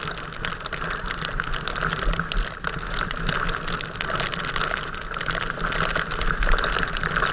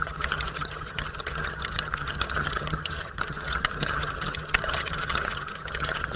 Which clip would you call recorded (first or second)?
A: first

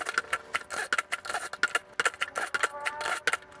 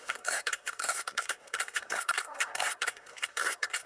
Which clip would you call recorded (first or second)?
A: first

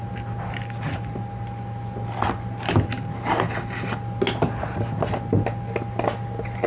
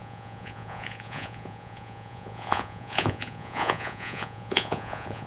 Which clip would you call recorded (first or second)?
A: first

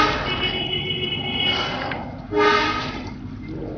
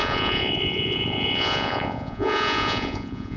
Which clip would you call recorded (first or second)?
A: first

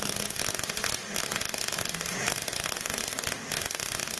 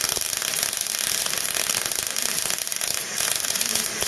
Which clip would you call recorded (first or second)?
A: first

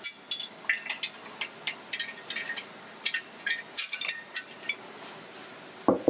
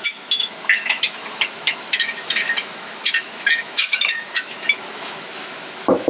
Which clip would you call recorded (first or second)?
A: first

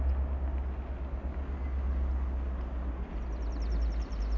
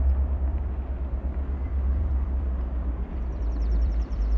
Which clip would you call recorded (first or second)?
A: first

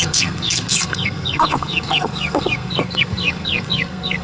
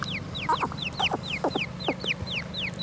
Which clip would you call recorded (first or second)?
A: second